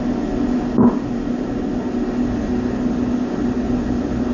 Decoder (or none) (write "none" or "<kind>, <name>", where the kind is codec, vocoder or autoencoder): none